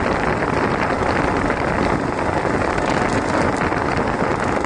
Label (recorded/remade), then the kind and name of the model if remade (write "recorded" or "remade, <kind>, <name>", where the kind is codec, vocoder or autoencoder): recorded